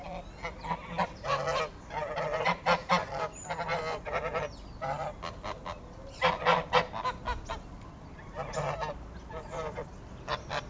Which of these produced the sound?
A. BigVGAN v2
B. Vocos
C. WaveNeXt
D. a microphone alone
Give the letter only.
D